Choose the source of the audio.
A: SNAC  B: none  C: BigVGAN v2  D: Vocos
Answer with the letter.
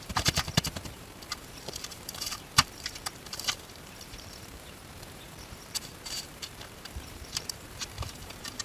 C